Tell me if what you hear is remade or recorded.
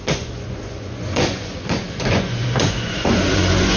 remade